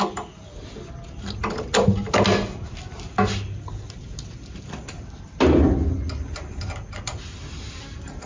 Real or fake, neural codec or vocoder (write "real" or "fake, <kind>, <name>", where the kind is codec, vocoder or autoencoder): real